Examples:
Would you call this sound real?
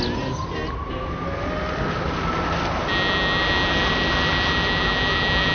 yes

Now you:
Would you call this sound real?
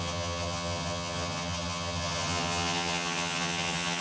no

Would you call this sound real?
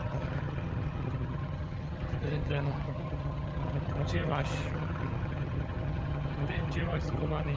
no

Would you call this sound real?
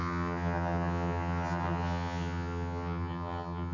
no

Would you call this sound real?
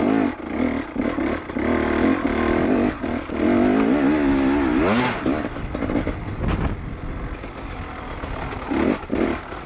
yes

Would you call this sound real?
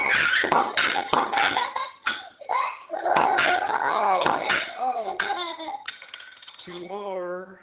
no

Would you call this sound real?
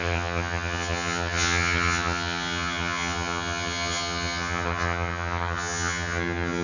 no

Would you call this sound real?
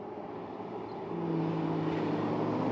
yes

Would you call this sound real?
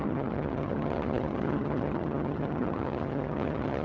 no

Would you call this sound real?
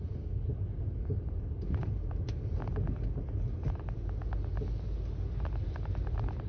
yes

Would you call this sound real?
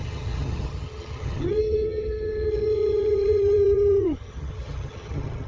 no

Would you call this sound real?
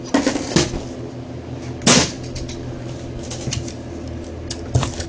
yes